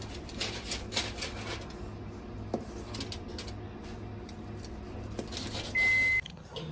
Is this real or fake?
real